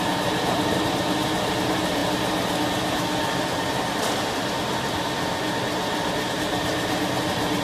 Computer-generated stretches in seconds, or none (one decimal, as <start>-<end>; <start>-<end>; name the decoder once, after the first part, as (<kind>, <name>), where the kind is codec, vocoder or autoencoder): none